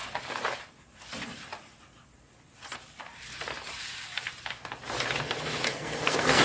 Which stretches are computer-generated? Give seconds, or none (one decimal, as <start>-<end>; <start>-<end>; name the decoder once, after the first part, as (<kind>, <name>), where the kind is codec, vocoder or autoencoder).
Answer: 5.7-6.4 (codec, SNAC)